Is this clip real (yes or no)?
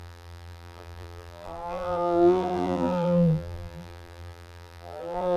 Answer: no